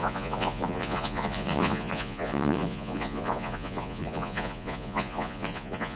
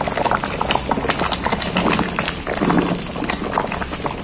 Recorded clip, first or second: second